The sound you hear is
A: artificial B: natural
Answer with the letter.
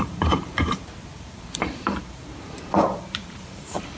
A